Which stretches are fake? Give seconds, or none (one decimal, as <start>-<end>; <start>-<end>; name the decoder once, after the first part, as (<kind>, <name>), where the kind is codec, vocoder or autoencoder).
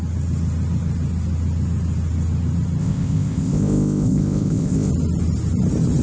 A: 2.8-4.9 (codec, ZipCodec)